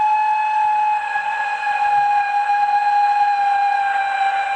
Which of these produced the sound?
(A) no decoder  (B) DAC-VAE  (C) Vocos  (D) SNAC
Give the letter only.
A